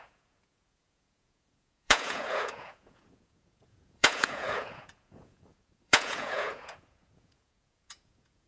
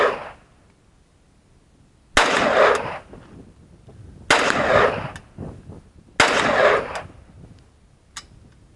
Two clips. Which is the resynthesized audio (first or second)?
first